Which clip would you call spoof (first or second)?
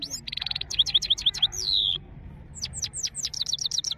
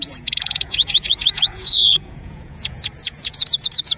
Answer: second